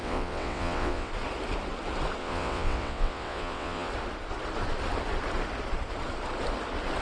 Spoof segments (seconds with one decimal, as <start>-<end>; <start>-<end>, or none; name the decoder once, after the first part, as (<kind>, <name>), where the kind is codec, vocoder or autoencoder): 0.0-1.1 (vocoder, WaveNeXt); 2.2-3.9